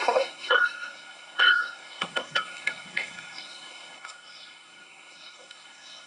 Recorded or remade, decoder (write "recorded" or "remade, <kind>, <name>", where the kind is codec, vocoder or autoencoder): remade, codec, SNAC